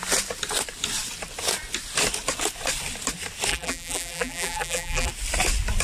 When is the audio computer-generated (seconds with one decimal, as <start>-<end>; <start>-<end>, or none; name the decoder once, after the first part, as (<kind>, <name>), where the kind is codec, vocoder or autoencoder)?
3.5-5.1 (vocoder, BigVGAN v2)